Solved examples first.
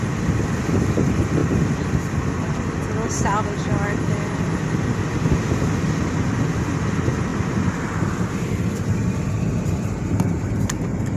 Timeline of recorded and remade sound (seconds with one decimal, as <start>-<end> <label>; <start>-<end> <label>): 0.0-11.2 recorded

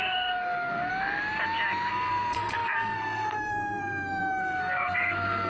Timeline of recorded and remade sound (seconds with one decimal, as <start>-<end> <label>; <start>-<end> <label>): 0.0-0.9 remade; 0.9-1.9 recorded; 1.9-5.5 remade

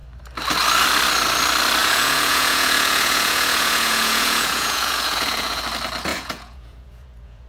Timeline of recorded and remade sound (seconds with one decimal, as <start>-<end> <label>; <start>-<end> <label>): 0.0-1.8 recorded; 1.8-5.6 remade; 5.6-6.1 recorded; 6.1-7.5 remade

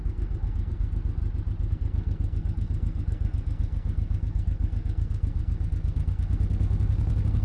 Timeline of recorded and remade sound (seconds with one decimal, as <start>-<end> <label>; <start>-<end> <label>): 0.0-1.2 remade; 1.2-1.7 recorded; 1.7-7.4 remade